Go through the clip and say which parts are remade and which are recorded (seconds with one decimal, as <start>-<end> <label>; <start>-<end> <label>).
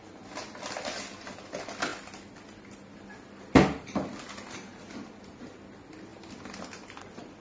0.0-7.4 recorded